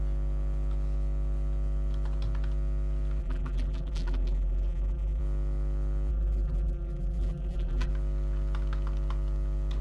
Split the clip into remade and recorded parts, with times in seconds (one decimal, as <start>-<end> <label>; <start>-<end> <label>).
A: 0.0-3.2 recorded; 3.2-5.2 remade; 5.2-6.1 recorded; 6.1-7.9 remade; 7.9-9.8 recorded